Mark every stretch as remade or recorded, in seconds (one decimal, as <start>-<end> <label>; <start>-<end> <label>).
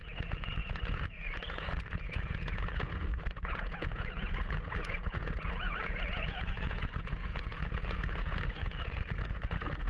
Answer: 0.0-9.9 remade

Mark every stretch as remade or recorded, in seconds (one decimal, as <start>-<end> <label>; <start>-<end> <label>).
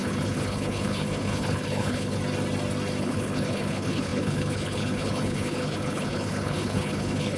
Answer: 0.0-2.2 remade; 2.2-3.0 recorded; 3.0-7.4 remade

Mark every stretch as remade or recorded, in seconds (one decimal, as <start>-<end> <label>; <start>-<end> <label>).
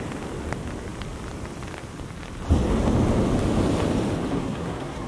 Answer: 0.0-4.3 recorded; 4.3-5.1 remade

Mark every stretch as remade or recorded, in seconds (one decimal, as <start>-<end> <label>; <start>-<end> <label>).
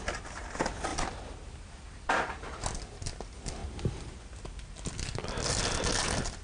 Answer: 0.0-6.4 recorded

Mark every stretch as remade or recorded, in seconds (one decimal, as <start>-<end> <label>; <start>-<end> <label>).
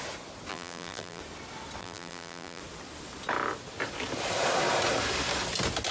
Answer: 0.0-0.5 recorded; 0.5-1.2 remade; 1.2-1.8 recorded; 1.8-2.6 remade; 2.6-5.9 recorded